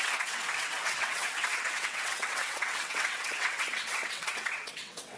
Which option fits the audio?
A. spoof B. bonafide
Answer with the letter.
A